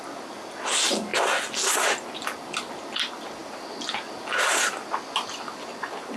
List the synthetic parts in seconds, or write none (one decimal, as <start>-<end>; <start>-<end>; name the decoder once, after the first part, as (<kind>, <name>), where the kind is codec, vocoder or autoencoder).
none

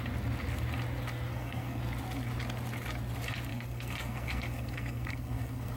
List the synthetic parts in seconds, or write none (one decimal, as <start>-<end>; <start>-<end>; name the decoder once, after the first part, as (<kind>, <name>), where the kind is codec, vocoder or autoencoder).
1.3-1.8 (codec, SNAC); 3.5-5.8